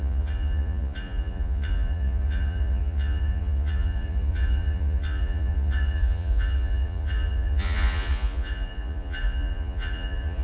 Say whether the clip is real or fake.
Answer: fake